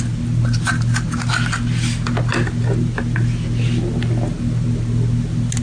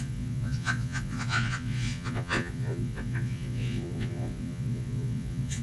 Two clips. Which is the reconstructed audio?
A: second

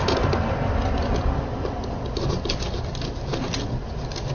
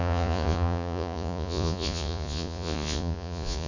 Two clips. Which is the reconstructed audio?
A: second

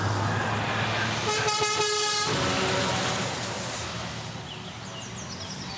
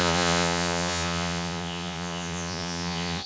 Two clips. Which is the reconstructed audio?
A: second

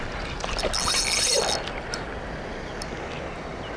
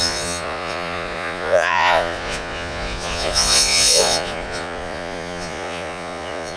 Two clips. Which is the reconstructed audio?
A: second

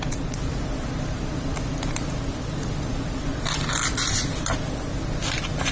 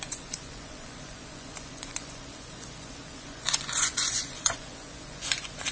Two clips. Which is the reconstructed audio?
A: second